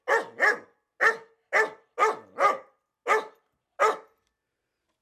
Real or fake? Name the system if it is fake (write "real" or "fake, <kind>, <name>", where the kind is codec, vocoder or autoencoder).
real